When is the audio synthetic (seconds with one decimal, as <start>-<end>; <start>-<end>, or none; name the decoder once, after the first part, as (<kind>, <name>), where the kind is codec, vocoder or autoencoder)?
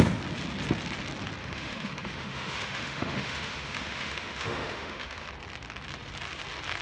1.4-5.3 (autoencoder, DAC-VAE)